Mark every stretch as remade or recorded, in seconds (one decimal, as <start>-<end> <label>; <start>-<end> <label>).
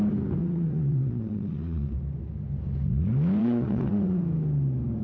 0.0-0.4 recorded; 0.4-1.9 remade; 1.9-3.4 recorded; 3.4-4.2 remade; 4.2-5.0 recorded